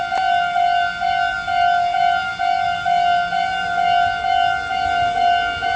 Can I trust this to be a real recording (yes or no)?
yes